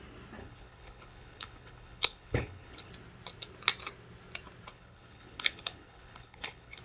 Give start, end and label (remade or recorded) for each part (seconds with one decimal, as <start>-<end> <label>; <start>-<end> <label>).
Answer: 0.0-0.4 recorded; 0.4-2.9 remade; 2.9-4.7 recorded; 4.7-6.8 remade